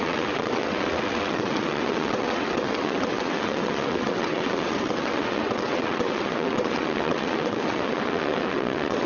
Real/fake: fake